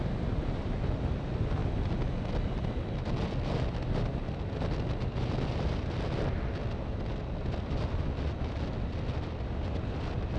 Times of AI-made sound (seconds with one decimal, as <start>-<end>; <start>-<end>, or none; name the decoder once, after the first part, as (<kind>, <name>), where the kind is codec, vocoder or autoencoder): none